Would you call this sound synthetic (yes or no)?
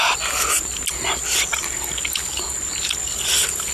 no